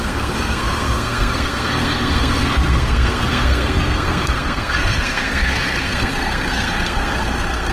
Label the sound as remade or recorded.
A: remade